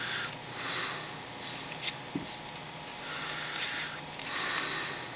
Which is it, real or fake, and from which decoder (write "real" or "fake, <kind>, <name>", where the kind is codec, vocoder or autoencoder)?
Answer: real